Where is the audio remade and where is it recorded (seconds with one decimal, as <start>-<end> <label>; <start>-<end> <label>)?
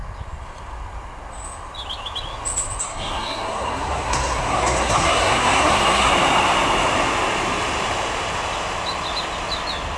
0.0-2.8 recorded; 2.8-6.1 remade; 6.1-10.0 recorded